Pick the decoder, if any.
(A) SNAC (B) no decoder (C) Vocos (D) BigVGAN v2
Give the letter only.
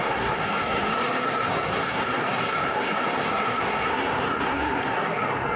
A